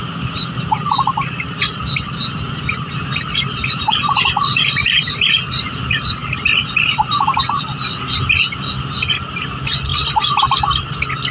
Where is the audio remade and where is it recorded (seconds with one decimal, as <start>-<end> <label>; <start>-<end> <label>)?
0.0-2.7 recorded; 2.7-5.6 remade; 5.6-9.9 recorded; 9.9-10.4 remade; 10.4-11.3 recorded

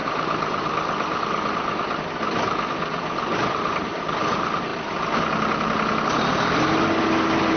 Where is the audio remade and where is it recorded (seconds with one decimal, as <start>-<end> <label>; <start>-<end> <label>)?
0.0-3.3 recorded; 3.3-4.0 remade; 4.0-7.6 recorded

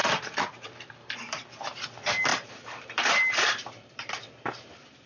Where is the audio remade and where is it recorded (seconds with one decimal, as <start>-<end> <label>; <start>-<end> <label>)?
0.0-1.6 remade; 1.6-2.3 recorded; 2.3-5.1 remade

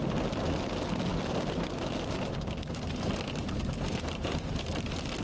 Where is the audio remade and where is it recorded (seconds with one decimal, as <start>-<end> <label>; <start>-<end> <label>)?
0.0-5.2 recorded

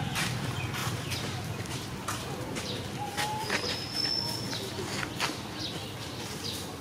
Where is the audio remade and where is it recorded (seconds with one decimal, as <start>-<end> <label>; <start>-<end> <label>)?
0.0-0.8 recorded; 0.8-2.8 remade; 2.8-6.8 recorded

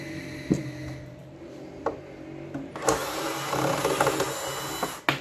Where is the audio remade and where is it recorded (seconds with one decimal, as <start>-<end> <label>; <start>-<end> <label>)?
0.0-1.2 recorded; 1.2-2.0 remade; 2.0-3.0 recorded; 3.0-3.8 remade; 3.8-5.2 recorded